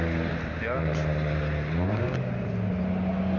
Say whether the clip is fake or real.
real